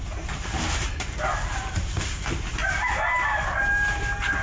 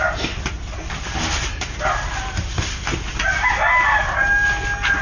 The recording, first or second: second